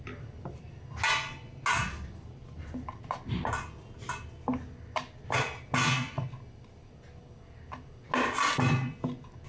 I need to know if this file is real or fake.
real